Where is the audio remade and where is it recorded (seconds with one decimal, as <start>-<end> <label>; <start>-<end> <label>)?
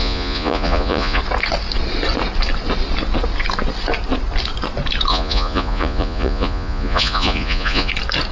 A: 0.0-1.2 remade; 1.2-5.1 recorded; 5.1-7.9 remade; 7.9-8.3 recorded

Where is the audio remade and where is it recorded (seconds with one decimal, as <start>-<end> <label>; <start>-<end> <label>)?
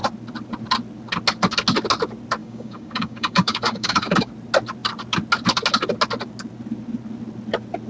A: 0.0-2.4 recorded; 2.4-4.3 remade; 4.3-7.9 recorded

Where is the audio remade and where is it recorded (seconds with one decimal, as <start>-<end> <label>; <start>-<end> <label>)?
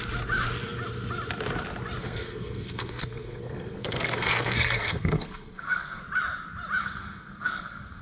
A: 0.0-2.0 recorded; 2.0-6.0 remade; 6.0-6.8 recorded; 6.8-8.0 remade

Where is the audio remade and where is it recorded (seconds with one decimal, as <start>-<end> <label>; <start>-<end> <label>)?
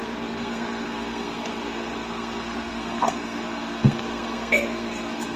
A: 0.0-5.4 remade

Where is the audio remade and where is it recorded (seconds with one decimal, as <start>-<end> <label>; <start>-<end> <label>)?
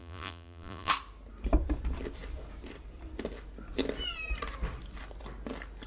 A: 0.0-0.9 remade; 0.9-5.9 recorded